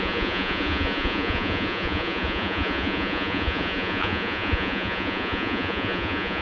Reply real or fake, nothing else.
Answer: fake